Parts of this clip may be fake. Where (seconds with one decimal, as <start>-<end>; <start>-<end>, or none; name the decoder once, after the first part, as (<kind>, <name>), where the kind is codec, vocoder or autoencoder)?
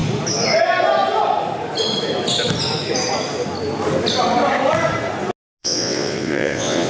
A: 5.6-6.9 (vocoder, WaveNeXt)